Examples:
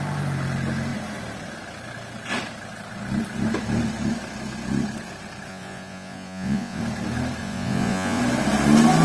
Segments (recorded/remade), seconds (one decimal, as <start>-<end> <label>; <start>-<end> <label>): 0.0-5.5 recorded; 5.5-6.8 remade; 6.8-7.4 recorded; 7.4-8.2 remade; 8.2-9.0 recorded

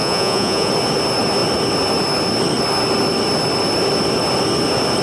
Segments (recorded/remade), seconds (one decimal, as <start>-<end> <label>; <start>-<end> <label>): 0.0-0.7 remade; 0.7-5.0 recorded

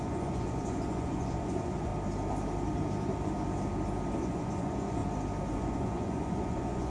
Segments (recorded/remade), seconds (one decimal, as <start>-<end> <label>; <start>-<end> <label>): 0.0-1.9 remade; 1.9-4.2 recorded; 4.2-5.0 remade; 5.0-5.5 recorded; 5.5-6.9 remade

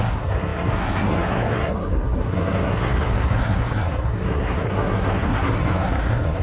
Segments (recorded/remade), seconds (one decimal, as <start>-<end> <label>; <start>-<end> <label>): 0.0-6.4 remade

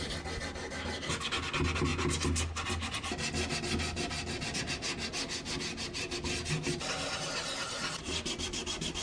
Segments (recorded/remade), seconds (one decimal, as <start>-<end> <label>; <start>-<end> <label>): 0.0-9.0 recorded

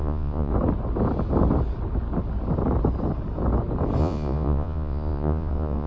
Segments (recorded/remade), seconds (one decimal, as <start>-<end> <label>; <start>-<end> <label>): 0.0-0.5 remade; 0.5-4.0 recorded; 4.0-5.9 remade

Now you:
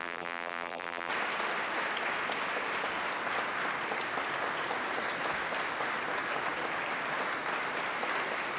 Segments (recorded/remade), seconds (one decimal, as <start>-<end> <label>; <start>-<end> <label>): 0.0-1.1 remade; 1.1-8.6 recorded